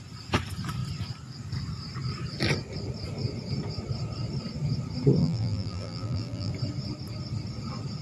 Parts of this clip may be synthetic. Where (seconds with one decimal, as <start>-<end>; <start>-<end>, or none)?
5.2-6.5